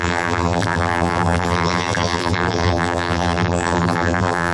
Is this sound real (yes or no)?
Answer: no